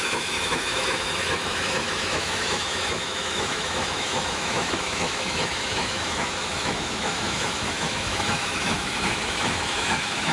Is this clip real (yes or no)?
no